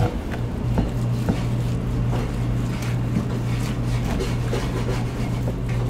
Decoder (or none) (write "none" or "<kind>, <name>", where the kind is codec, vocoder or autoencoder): none